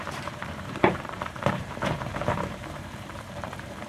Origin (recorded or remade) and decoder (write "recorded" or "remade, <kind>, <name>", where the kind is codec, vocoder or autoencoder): remade, vocoder, BigVGAN v2